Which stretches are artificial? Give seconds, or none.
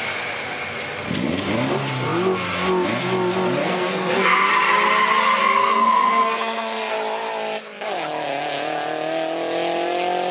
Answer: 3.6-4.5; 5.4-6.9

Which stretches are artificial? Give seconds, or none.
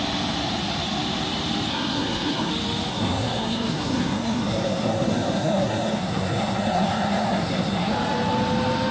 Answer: 1.7-2.5; 2.9-7.9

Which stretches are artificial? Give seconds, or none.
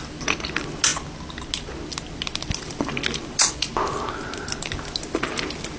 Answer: none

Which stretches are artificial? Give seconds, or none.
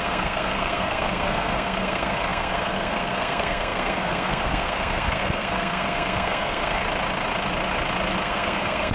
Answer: 0.0-6.8; 8.2-8.9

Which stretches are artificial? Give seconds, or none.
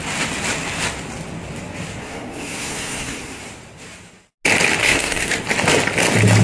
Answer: 2.0-3.4; 4.8-5.3